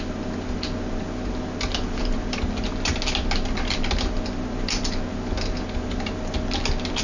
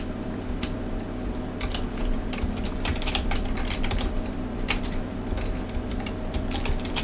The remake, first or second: second